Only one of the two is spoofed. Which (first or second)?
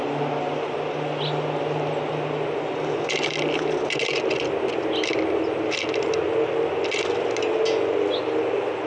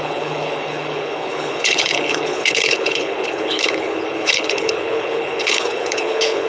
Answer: second